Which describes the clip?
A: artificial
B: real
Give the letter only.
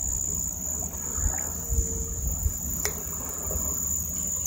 B